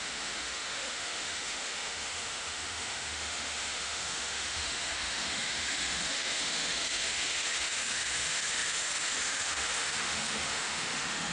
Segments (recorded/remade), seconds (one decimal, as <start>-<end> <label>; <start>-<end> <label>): 0.0-11.3 remade